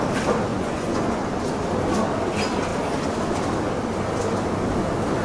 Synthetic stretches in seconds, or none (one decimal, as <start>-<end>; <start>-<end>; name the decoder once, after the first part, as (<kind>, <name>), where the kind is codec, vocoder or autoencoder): 0.5-1.2 (vocoder, Vocos)